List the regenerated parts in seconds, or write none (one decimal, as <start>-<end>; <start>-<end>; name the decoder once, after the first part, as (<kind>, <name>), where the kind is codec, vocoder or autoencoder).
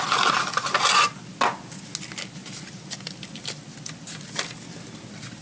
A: none